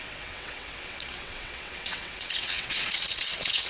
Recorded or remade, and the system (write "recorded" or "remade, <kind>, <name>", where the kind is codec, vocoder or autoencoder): remade, vocoder, WaveNeXt